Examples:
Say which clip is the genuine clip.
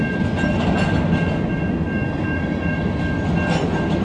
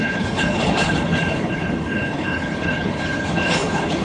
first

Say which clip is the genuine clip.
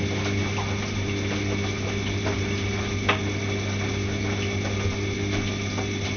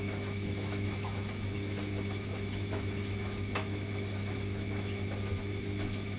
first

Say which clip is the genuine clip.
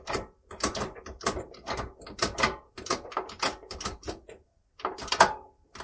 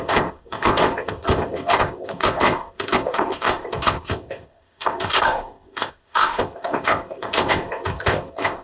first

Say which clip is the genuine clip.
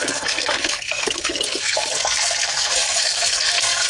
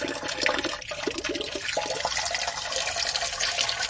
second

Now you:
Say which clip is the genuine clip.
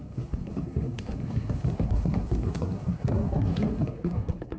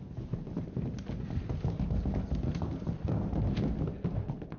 second